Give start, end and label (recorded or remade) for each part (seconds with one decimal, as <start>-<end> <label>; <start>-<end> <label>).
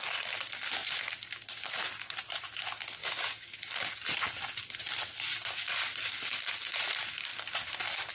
0.0-0.8 recorded; 0.8-2.6 remade; 2.6-3.0 recorded; 3.0-3.7 remade; 3.7-8.1 recorded